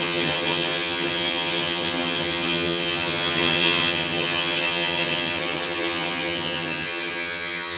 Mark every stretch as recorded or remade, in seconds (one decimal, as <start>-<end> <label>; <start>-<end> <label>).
0.0-7.8 remade